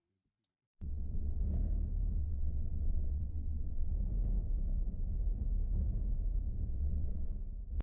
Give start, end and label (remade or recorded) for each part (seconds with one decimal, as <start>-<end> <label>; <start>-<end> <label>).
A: 0.0-0.7 recorded; 0.7-1.4 remade; 1.4-2.2 recorded; 2.2-3.9 remade; 3.9-6.7 recorded; 6.7-7.3 remade; 7.3-7.8 recorded